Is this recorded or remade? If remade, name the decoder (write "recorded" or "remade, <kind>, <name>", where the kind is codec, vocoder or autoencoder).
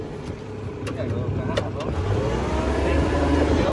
recorded